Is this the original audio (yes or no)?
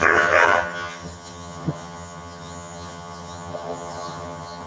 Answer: no